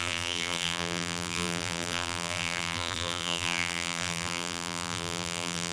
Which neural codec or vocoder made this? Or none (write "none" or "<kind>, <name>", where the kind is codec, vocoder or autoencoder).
vocoder, BigVGAN v2